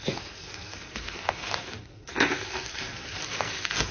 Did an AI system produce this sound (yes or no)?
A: yes